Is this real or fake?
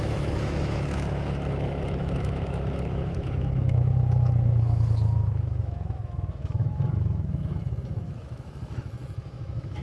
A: fake